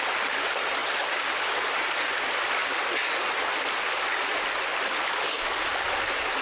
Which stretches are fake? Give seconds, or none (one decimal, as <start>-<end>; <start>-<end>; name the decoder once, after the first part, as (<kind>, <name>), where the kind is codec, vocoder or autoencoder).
0.0-0.8 (vocoder, BigVGAN v2); 1.9-2.6; 3.6-4.3; 5.7-6.4